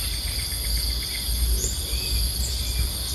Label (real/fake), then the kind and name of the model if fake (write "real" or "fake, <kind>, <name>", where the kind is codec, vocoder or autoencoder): fake, vocoder, BigVGAN v2